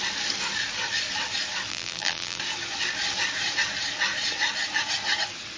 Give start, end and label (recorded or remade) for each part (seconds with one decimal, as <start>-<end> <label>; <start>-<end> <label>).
0.0-1.7 recorded; 1.7-2.4 remade; 2.4-5.6 recorded